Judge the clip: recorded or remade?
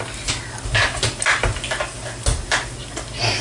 recorded